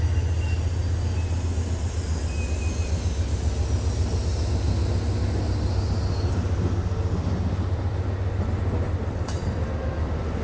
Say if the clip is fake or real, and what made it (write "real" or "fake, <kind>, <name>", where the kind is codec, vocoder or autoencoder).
real